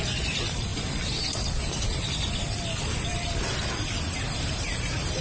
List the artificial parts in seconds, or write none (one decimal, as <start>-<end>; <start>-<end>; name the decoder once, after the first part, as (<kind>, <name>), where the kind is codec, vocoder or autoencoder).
none

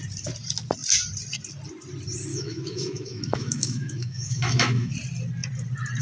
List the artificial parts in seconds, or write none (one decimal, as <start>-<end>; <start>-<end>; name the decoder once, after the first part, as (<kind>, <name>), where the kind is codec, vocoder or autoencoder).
2.3-4.9 (autoencoder, DAC-VAE)

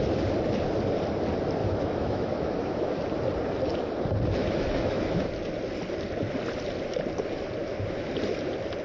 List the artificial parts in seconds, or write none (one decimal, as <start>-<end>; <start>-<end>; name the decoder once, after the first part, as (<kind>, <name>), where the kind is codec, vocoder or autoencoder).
1.6-3.0 (autoencoder, DAC-VAE); 4.4-5.3; 7.6-8.1

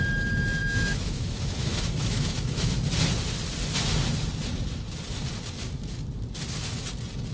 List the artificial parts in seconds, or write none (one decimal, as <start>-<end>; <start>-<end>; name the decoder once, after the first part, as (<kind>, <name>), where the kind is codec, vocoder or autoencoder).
0.6-2.8 (autoencoder, DAC-VAE)